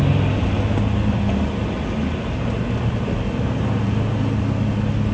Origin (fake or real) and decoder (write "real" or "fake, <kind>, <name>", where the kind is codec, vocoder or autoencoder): real